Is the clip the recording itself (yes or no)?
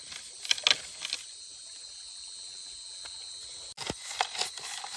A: yes